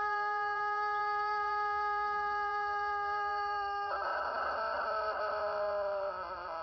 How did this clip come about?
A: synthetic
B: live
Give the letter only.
A